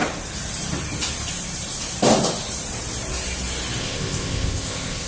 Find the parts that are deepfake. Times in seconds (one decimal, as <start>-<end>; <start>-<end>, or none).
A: 3.8-5.1